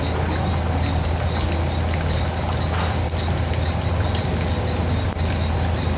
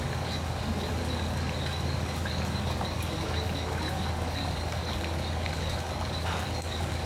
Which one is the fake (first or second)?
second